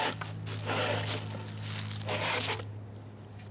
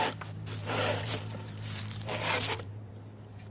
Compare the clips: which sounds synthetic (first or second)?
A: second